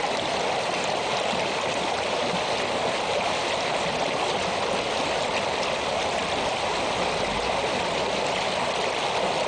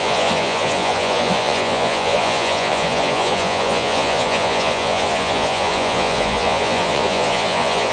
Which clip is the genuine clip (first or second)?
first